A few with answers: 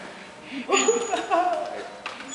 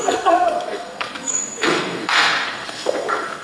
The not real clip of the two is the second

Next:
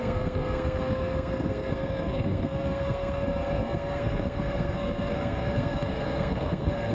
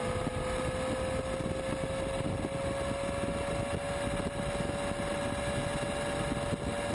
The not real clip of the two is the first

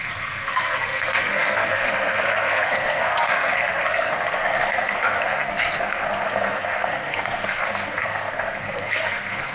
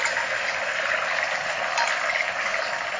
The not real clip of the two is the first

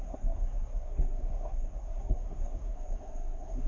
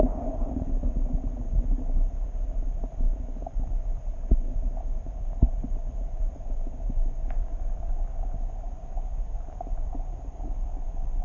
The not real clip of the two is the first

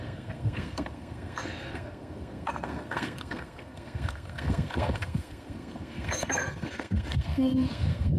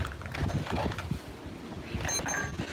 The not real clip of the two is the first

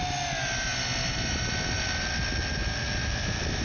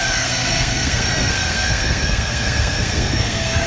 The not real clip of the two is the second